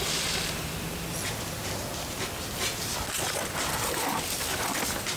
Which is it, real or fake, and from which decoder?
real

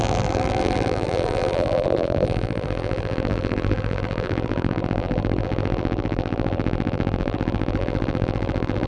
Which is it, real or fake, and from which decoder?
fake, vocoder, BigVGAN v2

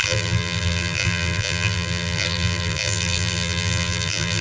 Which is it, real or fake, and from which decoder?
fake, vocoder, BigVGAN v2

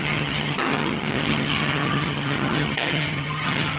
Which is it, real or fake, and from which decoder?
fake, vocoder, HiFi-GAN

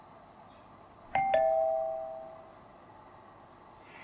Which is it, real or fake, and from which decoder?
real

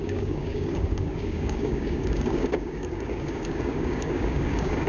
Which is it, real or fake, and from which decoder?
fake, codec, DAC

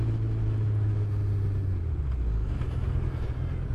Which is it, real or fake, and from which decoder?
real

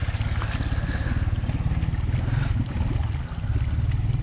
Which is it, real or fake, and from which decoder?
real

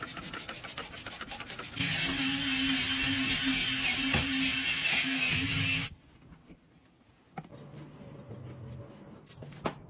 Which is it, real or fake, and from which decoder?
real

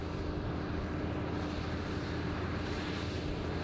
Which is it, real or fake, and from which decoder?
real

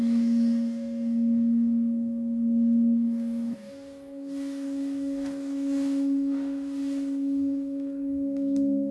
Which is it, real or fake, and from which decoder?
fake, codec, DAC